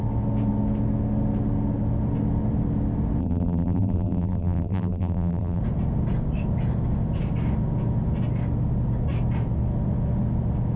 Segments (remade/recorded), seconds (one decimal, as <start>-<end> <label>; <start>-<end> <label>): 0.0-3.2 recorded; 3.2-5.6 remade; 5.6-10.8 recorded